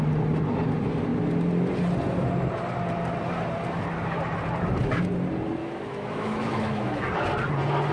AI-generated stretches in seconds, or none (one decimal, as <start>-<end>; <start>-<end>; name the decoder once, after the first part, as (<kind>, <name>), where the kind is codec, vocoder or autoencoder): 5.6-7.0 (autoencoder, DAC-VAE)